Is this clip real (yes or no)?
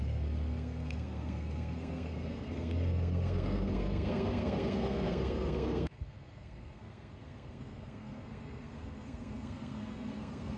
no